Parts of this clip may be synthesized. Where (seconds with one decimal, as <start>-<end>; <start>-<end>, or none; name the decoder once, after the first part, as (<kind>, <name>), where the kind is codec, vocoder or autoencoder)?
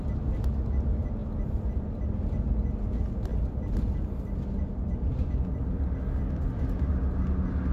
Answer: none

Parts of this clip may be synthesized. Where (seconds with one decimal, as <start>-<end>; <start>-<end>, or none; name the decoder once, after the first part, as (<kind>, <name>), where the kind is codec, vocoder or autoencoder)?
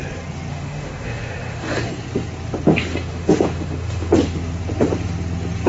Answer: 0.5-1.9 (autoencoder, DAC-VAE); 2.9-4.1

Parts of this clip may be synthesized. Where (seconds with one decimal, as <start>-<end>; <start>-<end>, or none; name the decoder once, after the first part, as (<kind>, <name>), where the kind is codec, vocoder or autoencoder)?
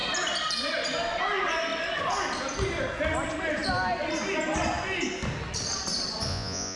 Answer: 6.3-6.8 (vocoder, Vocos)